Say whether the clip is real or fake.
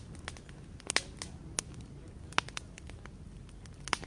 real